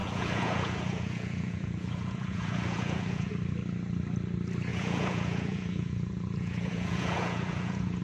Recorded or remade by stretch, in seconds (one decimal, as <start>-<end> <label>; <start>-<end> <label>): 0.0-3.3 remade; 3.3-4.7 recorded; 4.7-8.0 remade